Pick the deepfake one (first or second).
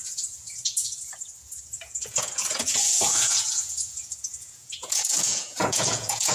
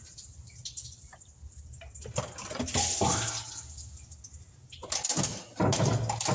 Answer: first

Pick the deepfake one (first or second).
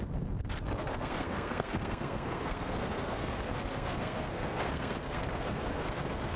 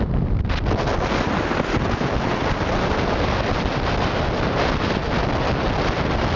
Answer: first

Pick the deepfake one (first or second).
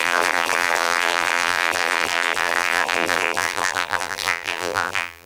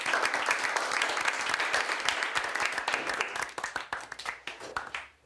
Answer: first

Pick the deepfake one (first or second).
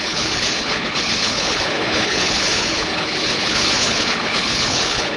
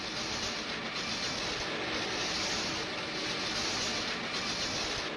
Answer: first